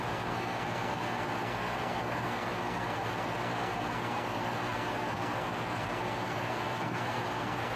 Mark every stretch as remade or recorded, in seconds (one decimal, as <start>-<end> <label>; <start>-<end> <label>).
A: 0.0-7.8 remade